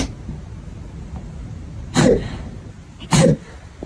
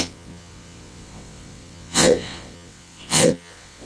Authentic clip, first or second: first